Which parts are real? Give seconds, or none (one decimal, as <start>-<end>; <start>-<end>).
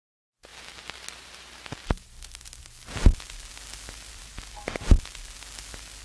0.0-6.0